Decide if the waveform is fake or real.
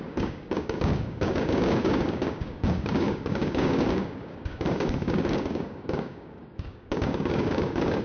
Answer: fake